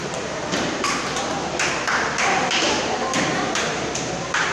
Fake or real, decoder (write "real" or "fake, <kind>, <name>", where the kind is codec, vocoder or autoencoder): fake, vocoder, BigVGAN v2